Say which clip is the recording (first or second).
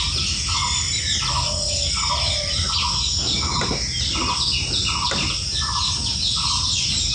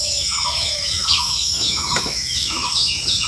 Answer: first